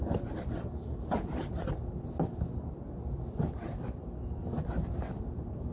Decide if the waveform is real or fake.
real